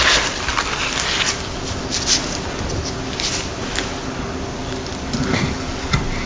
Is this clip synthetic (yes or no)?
no